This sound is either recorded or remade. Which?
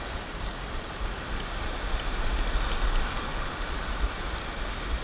recorded